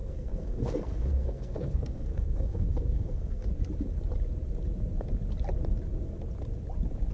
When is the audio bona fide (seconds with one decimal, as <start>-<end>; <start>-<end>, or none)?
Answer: 3.5-7.1